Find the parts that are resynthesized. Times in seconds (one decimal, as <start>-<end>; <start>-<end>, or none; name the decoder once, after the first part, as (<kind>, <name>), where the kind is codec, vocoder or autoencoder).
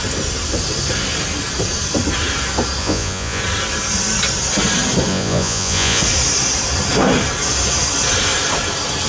2.8-3.4 (vocoder, Vocos); 5.1-6.0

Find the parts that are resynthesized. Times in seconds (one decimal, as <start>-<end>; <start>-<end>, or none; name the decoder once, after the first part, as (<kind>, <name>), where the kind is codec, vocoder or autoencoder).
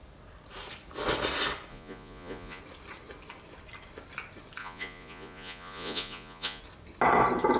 1.7-2.6 (vocoder, Vocos); 4.6-6.6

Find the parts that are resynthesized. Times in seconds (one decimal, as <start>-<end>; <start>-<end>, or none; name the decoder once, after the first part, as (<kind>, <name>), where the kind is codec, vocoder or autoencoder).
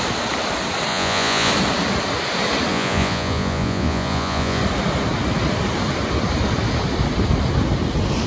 0.9-1.5 (vocoder, Vocos); 2.7-4.6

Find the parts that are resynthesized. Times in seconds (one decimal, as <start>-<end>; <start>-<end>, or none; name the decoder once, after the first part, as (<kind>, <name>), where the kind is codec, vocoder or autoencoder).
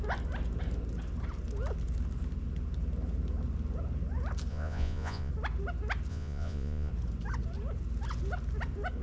4.5-5.3 (vocoder, Vocos); 6.1-6.9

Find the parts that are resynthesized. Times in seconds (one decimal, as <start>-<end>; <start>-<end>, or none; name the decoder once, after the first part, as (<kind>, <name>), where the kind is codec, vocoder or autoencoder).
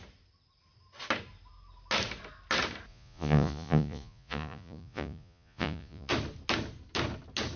2.9-6.1 (vocoder, Vocos)